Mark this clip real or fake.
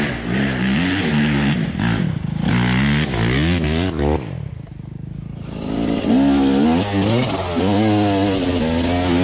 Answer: real